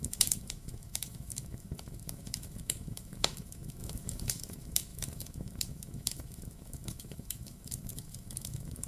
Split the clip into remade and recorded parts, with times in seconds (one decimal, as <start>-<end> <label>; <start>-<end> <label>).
0.0-8.9 remade